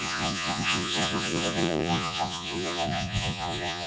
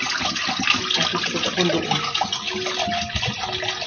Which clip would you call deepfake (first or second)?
first